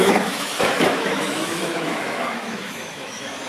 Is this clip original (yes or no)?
no